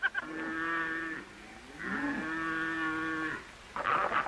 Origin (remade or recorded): recorded